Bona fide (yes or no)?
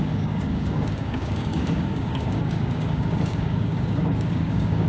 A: no